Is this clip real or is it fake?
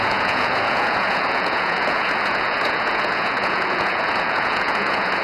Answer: fake